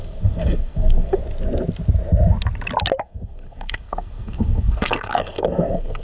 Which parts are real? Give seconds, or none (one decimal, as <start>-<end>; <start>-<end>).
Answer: 1.2-3.0